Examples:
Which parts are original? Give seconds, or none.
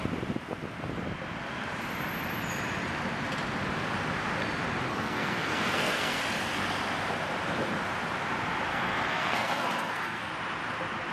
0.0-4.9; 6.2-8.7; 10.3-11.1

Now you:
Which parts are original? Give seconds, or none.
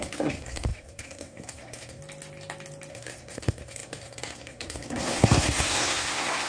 2.0-2.9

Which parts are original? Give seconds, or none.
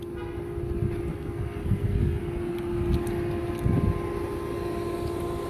0.0-1.1; 2.2-5.5